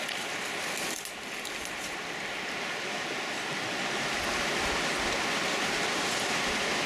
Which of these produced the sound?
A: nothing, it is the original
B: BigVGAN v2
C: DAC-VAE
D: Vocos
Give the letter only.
A